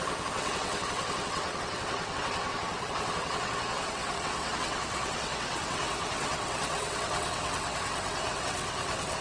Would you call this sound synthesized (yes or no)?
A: yes